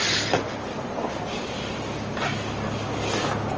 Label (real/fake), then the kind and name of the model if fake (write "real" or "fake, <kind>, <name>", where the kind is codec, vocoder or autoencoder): real